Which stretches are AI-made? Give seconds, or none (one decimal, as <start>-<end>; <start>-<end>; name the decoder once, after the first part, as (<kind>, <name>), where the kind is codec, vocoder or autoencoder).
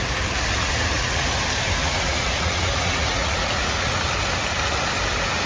0.6-1.3 (vocoder, Vocos); 1.8-3.9